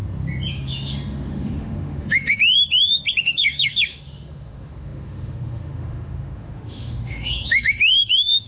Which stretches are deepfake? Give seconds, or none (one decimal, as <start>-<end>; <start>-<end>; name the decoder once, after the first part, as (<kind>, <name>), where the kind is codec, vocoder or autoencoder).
0.5-2.4 (autoencoder, DAC-VAE); 3.2-8.5